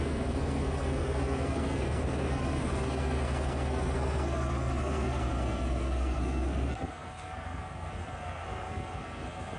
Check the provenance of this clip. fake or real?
fake